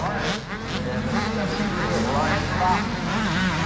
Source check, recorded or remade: recorded